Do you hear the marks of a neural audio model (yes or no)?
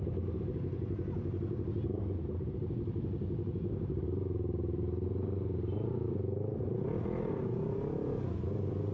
no